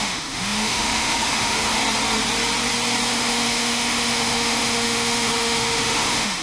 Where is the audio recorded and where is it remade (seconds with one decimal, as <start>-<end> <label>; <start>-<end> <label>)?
0.0-1.8 remade; 1.8-3.1 recorded; 3.1-6.4 remade